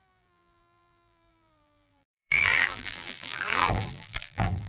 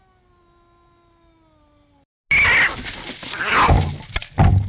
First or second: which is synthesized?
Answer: first